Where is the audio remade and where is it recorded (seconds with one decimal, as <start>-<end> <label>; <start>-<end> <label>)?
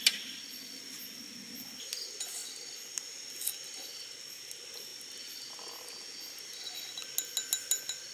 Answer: 0.0-8.1 recorded